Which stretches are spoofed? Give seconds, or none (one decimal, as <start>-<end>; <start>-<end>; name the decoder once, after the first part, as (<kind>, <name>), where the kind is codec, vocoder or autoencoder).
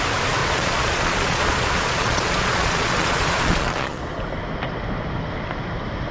0.4-4.0 (vocoder, Vocos)